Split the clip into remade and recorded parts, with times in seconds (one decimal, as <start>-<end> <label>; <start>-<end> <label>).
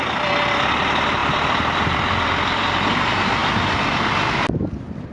0.0-1.2 recorded; 1.2-2.9 remade; 2.9-3.4 recorded; 3.4-4.1 remade; 4.1-5.1 recorded